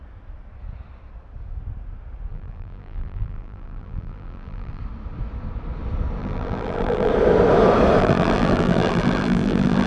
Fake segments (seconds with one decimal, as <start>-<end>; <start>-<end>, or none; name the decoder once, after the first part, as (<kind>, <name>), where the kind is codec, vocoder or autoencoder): 2.3-4.8 (vocoder, BigVGAN v2); 6.2-7.1; 8.0-9.9